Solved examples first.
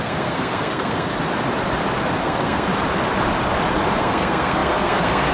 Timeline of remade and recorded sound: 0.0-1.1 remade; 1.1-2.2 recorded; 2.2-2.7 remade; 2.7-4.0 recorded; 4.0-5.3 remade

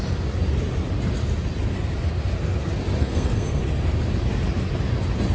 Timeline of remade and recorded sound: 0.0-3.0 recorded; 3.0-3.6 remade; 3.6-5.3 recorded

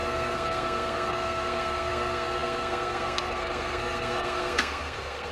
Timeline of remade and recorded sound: 0.0-5.3 remade